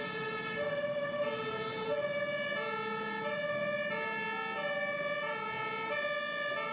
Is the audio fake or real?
real